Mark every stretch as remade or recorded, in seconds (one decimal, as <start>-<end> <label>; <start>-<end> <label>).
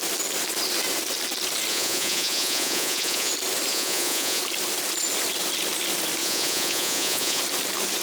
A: 0.0-1.7 recorded; 1.7-3.3 remade; 3.3-3.7 recorded; 3.7-4.4 remade; 4.4-6.2 recorded; 6.2-7.4 remade; 7.4-8.0 recorded